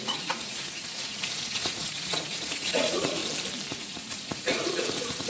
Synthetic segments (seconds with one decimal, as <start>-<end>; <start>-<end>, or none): 0.0-3.2; 3.7-5.3